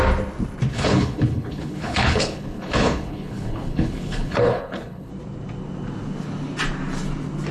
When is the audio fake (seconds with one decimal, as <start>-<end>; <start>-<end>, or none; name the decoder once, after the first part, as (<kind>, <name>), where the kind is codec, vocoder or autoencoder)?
0.7-5.1 (codec, HILCodec)